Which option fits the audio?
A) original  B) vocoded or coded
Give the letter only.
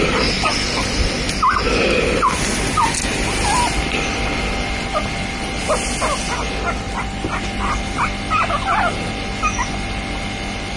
A